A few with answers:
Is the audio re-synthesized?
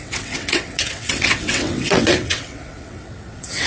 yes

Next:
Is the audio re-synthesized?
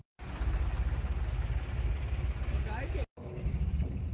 no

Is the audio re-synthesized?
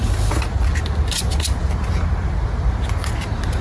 no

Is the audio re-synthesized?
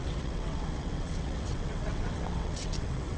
yes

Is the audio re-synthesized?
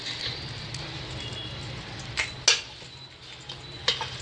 no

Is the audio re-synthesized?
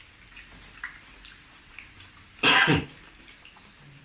no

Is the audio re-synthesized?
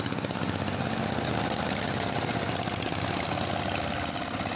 no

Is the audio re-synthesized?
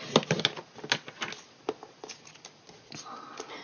no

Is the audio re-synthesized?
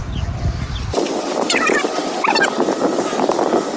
no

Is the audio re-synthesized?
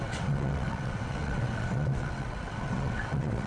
yes